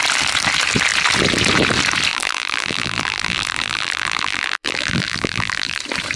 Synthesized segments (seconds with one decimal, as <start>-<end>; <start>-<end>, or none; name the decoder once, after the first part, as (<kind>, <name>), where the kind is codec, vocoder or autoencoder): 2.1-5.8 (vocoder, BigVGAN v2)